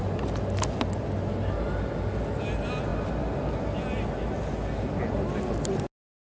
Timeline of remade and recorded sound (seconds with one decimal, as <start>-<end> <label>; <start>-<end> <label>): 0.0-6.3 recorded